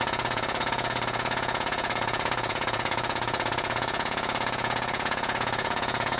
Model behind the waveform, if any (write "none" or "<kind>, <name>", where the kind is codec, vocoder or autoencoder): vocoder, Vocos